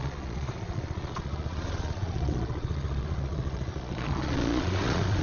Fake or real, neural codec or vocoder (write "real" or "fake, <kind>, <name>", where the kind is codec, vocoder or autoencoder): fake, vocoder, Vocos